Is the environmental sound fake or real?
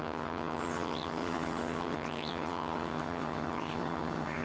fake